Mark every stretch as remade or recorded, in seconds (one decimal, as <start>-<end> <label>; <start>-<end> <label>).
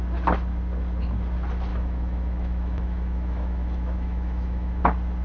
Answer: 0.0-1.7 recorded; 1.7-4.8 remade; 4.8-5.2 recorded